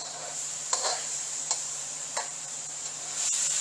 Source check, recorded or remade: remade